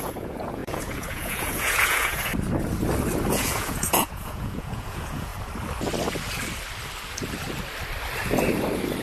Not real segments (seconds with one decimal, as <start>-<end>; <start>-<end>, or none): 0.0-2.3; 3.3-5.3